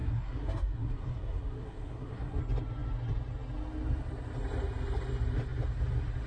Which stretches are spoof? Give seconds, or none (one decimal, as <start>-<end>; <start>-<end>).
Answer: 0.0-2.4

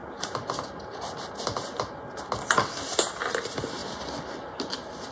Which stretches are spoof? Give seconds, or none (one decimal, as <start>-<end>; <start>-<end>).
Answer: 3.1-3.8; 4.6-5.1

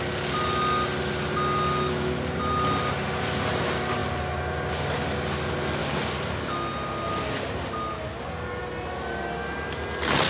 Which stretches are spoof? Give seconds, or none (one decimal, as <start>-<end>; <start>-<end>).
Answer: none

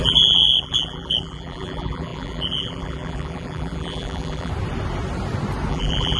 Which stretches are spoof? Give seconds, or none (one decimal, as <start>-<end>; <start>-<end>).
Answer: 0.0-4.5; 5.7-6.2

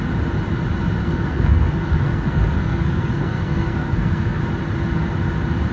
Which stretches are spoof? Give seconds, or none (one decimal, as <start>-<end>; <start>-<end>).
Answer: 1.0-4.4